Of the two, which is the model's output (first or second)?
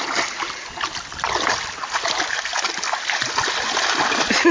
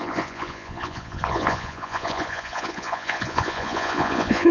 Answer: second